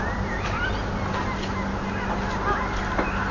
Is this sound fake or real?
real